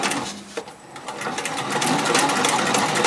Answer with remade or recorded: recorded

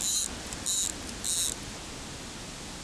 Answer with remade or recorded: recorded